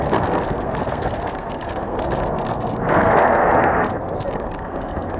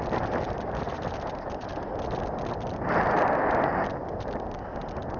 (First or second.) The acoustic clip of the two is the second